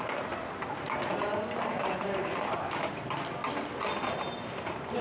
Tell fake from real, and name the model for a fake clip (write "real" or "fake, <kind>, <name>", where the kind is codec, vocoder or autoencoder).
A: real